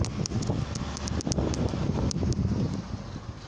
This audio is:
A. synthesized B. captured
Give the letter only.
B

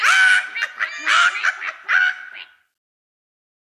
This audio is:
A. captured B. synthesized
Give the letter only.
A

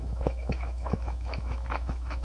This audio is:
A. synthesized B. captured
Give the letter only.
A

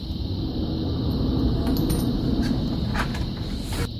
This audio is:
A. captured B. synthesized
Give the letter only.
A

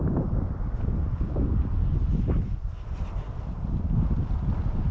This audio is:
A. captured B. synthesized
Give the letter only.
A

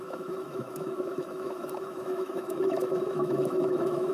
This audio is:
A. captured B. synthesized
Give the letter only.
B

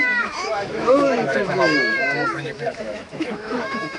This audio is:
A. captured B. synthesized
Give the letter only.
B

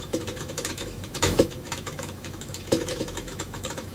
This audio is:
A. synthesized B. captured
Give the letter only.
A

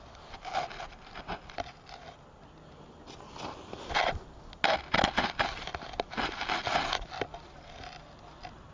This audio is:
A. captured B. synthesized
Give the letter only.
A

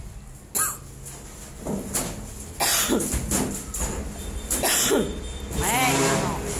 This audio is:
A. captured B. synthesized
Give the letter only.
A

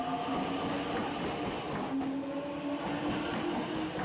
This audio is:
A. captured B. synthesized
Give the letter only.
A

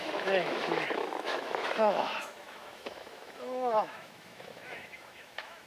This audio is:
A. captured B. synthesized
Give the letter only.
B